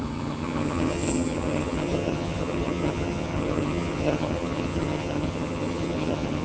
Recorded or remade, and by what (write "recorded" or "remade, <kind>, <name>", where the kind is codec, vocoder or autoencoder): remade, vocoder, HiFi-GAN